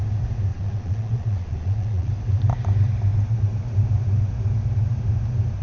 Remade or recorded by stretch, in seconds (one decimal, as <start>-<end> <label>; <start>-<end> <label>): 0.0-0.5 recorded; 0.5-2.1 remade; 2.1-5.6 recorded